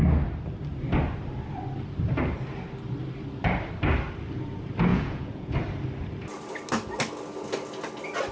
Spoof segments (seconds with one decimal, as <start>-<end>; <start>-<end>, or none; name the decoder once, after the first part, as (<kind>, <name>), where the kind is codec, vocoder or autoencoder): 4.9-5.5 (vocoder, Vocos)

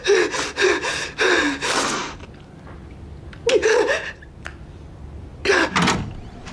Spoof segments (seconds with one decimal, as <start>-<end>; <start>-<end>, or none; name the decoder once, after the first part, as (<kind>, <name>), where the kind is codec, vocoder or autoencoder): none

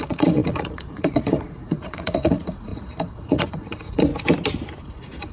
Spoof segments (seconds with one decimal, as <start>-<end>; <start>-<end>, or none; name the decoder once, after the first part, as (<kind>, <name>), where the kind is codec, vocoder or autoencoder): 0.0-4.1 (vocoder, Vocos); 4.8-5.3

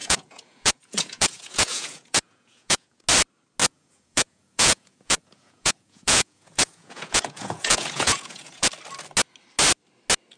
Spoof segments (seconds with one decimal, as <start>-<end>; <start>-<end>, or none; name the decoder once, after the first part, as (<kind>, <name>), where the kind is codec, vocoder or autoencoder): 0.0-3.0 (vocoder, Vocos); 3.6-8.7